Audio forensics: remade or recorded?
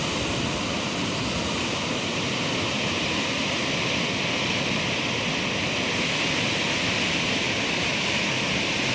recorded